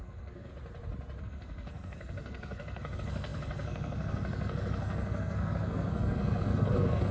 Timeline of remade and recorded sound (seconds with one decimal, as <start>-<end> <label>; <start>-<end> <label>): 0.0-0.5 remade; 0.5-1.2 recorded; 1.2-7.1 remade